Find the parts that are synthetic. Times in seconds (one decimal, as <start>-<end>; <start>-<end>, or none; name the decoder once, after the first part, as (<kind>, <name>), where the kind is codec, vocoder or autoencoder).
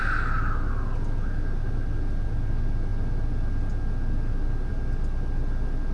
none